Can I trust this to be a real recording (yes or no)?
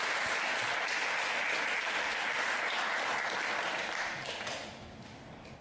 yes